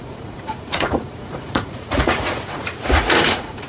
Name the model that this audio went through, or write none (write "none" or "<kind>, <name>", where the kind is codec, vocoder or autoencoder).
vocoder, Vocos